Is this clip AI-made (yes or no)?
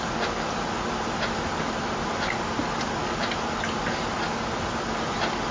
no